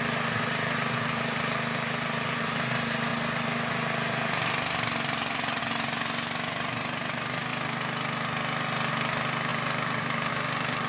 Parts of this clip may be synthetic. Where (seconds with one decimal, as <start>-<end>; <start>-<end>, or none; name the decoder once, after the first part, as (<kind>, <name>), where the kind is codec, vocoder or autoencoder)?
none